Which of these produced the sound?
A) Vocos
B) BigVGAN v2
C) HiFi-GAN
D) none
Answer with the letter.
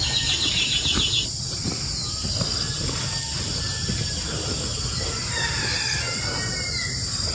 D